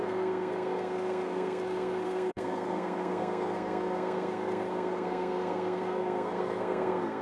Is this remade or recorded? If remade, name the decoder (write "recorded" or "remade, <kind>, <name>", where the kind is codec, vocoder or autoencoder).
remade, codec, SNAC